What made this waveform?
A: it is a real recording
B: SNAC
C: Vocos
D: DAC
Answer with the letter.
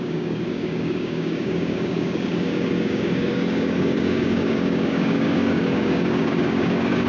D